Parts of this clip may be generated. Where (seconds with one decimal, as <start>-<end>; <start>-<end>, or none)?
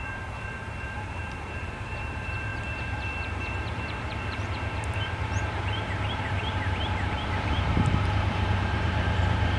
0.0-9.6